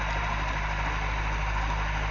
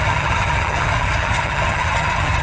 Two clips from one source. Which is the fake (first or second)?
second